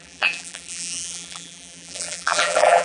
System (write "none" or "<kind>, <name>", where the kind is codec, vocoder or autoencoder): vocoder, BigVGAN v2